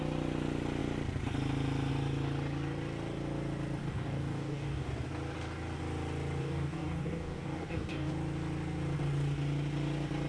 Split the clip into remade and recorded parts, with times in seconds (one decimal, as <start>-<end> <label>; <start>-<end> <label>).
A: 0.0-3.8 recorded; 3.8-4.9 remade; 4.9-6.4 recorded; 6.4-8.1 remade; 8.1-10.3 recorded